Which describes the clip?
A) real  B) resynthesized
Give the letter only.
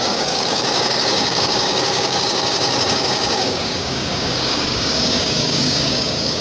B